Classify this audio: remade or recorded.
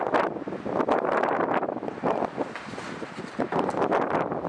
recorded